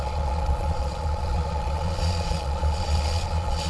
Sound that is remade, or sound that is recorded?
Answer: remade